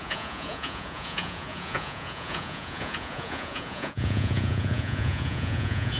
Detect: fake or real fake